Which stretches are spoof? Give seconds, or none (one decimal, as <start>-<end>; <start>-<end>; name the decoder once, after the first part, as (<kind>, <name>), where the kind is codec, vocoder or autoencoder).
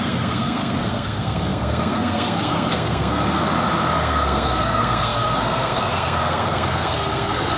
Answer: 0.0-3.5 (codec, SNAC); 4.0-7.6